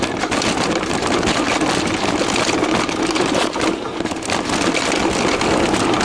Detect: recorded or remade recorded